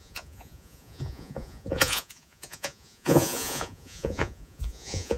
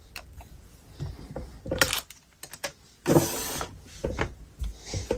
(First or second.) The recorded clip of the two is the second